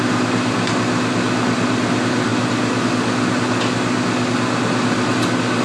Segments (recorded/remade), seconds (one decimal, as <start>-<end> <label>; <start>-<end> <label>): 0.0-5.6 recorded